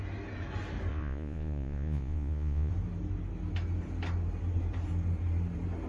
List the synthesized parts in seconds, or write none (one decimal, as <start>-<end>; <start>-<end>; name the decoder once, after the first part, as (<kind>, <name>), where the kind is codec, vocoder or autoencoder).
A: 0.9-2.7 (vocoder, Vocos)